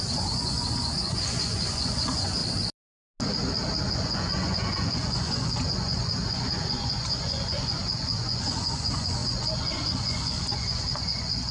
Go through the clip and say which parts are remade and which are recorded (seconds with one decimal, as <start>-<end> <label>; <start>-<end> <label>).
0.0-2.4 remade; 2.4-3.9 recorded; 3.9-11.5 remade